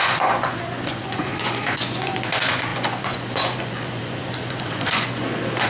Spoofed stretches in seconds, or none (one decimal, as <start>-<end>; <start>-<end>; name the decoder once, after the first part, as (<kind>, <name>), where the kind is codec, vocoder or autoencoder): 0.0-5.7 (vocoder, Vocos)